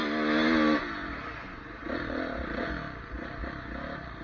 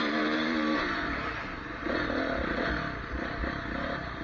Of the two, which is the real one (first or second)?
first